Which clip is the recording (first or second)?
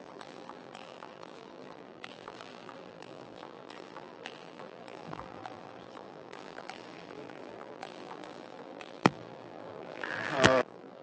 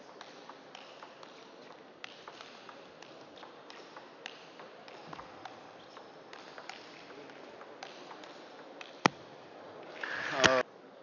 second